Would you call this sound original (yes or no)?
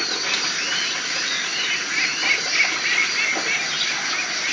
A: yes